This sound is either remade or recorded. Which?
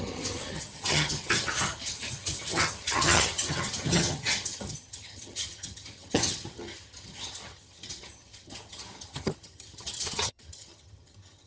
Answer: remade